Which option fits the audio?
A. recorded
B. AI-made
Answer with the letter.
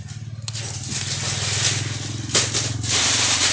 A